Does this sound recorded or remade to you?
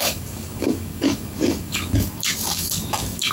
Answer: remade